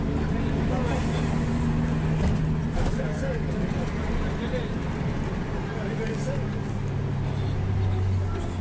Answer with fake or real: real